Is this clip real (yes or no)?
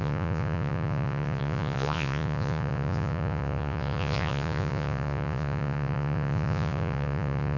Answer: no